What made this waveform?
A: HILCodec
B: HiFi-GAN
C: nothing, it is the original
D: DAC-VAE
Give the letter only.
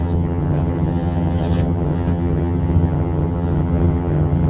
B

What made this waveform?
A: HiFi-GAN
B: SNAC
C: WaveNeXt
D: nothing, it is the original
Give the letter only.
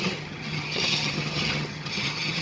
A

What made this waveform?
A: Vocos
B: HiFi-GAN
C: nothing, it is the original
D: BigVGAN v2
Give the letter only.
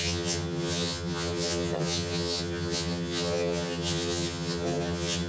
B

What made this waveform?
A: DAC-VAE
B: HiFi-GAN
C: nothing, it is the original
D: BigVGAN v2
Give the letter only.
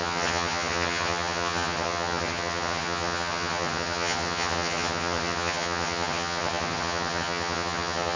B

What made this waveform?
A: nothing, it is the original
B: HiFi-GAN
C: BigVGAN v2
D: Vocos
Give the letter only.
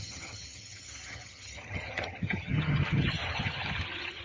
B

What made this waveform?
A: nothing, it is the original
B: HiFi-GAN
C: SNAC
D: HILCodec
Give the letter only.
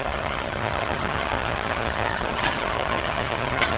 B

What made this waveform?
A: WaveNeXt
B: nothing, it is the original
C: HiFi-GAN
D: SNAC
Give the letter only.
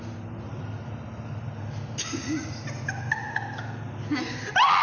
B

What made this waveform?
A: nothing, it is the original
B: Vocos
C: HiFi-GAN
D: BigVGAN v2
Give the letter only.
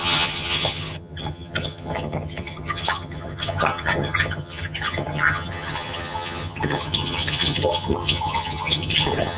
C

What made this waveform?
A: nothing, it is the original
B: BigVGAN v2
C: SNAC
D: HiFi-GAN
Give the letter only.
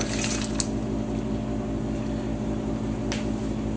A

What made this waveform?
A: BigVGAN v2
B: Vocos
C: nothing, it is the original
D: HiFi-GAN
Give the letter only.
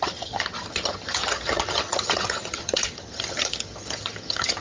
D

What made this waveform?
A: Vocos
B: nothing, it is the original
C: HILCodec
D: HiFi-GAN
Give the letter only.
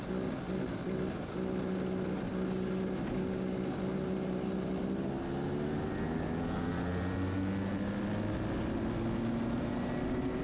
B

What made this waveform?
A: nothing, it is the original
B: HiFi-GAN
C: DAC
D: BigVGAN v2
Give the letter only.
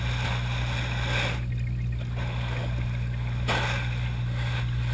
A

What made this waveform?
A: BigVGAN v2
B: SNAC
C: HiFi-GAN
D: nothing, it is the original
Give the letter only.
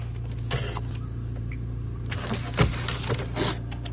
D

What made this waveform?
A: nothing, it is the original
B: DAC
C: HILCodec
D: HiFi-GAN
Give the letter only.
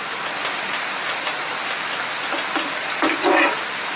A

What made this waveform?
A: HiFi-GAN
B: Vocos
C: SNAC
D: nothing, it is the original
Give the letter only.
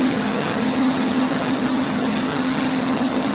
A